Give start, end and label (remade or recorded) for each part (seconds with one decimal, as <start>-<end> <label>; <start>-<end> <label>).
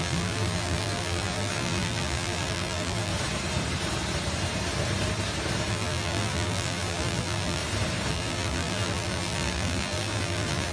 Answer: 0.0-3.1 remade; 3.1-5.7 recorded; 5.7-7.6 remade; 7.6-8.1 recorded; 8.1-10.7 remade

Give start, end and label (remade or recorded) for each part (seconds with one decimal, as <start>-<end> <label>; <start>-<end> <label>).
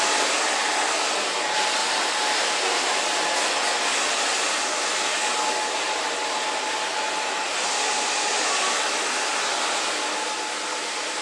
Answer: 0.0-11.2 recorded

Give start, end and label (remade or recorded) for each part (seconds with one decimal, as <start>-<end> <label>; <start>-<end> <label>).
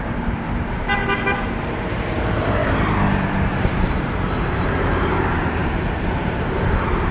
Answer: 0.0-1.0 remade; 1.0-1.6 recorded; 1.6-2.6 remade; 2.6-3.5 recorded; 3.5-7.1 remade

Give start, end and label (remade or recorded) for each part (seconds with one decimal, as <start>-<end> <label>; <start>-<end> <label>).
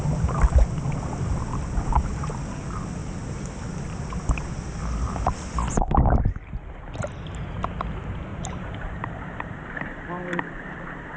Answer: 0.0-8.3 recorded; 8.3-11.2 remade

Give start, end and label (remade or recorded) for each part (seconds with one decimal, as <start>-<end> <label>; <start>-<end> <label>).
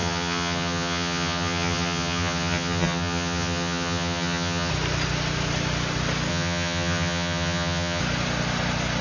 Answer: 0.0-4.7 remade; 4.7-6.3 recorded; 6.3-8.0 remade; 8.0-9.0 recorded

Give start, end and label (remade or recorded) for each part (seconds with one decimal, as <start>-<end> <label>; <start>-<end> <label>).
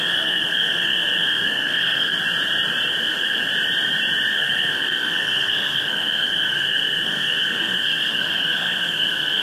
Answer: 0.0-2.1 remade; 2.1-3.0 recorded; 3.0-3.5 remade; 3.5-4.3 recorded; 4.3-9.4 remade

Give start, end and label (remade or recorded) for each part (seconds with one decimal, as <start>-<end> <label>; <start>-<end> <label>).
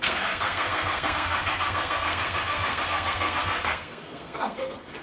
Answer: 0.0-5.0 remade